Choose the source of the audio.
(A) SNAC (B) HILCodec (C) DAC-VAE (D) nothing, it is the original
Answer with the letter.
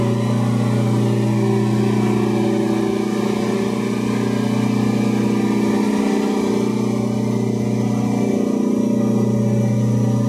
D